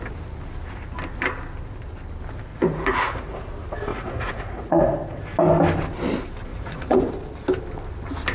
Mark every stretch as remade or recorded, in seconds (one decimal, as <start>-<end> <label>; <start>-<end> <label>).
0.0-2.5 recorded; 2.5-3.5 remade; 3.5-3.9 recorded; 3.9-5.2 remade; 5.2-6.5 recorded; 6.5-7.1 remade; 7.1-8.3 recorded